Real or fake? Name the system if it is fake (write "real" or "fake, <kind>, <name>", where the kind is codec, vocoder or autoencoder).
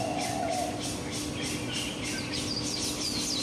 real